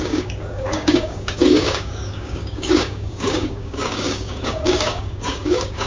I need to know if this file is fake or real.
fake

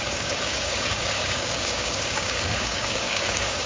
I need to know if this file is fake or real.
fake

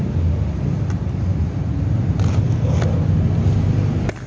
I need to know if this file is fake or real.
real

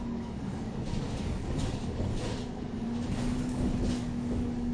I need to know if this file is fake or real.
fake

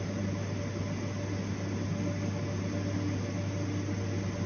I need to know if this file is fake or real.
real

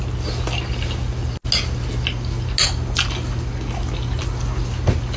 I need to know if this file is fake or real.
real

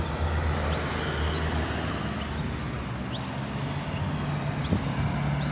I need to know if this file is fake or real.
real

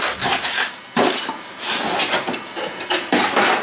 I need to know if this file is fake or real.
real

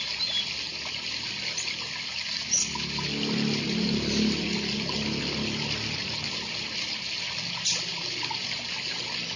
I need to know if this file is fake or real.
real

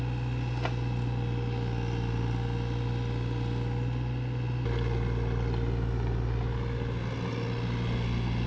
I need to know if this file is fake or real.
real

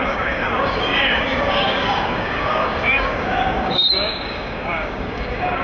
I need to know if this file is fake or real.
fake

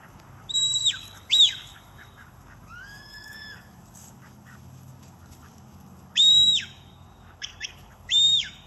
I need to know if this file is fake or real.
fake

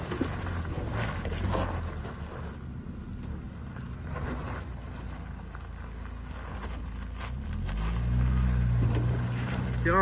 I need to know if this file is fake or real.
real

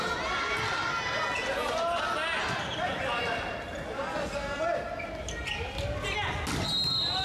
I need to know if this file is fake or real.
real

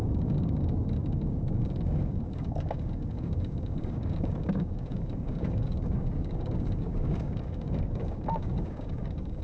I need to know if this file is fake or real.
fake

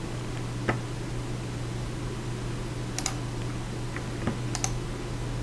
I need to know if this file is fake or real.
real